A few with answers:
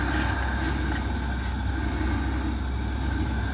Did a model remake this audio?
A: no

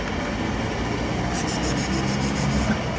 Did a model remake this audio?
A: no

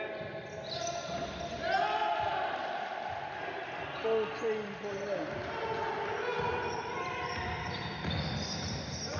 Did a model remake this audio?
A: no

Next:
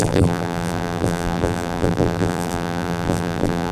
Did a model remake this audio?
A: yes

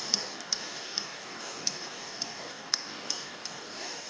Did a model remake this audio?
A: yes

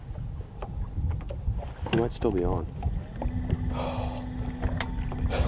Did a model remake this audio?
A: no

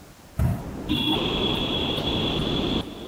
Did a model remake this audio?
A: no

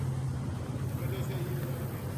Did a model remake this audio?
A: no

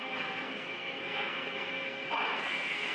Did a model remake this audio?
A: yes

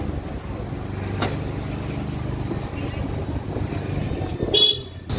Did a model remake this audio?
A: no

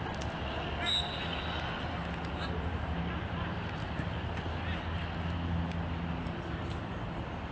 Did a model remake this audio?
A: no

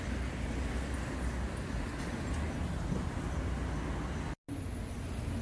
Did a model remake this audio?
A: no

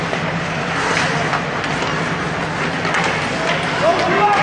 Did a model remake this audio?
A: no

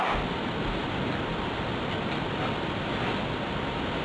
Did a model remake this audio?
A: no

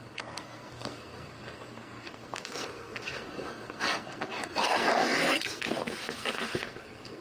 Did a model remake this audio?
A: yes